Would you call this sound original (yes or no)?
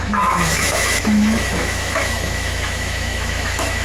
no